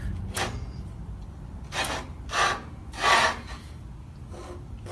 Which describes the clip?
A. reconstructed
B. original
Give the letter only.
B